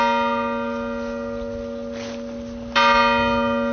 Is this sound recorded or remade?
recorded